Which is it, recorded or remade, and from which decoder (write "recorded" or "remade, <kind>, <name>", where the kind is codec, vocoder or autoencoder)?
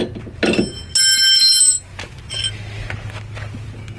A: recorded